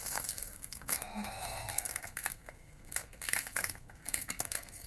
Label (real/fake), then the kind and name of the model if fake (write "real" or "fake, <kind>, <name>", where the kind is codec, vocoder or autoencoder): fake, codec, SNAC